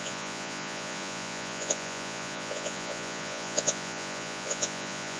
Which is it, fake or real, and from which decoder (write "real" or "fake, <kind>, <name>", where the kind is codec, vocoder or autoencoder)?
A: fake, vocoder, Vocos